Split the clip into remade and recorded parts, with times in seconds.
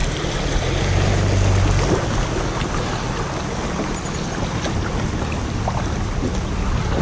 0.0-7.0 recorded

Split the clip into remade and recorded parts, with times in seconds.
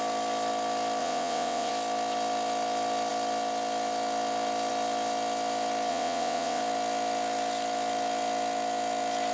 0.0-1.0 recorded; 1.0-1.7 remade; 1.7-5.9 recorded; 5.9-6.6 remade; 6.6-9.3 recorded